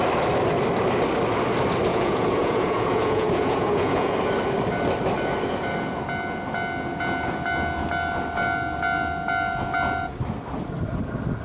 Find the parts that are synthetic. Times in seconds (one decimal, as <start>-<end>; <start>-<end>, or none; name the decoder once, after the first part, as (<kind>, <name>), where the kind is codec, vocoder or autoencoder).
1.9-4.2 (vocoder, Vocos)